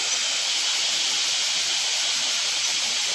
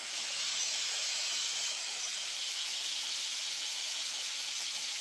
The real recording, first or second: first